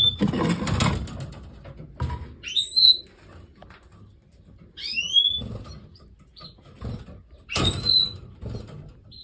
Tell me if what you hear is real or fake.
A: real